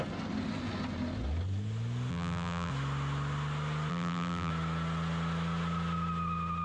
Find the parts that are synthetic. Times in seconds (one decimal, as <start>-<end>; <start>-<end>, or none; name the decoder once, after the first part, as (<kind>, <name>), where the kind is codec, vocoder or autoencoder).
2.1-2.7 (vocoder, BigVGAN v2); 3.9-4.5